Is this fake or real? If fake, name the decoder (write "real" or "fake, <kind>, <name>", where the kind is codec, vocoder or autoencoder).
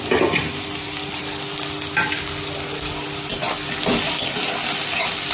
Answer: real